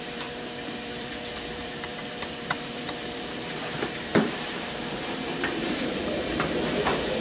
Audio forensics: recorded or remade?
remade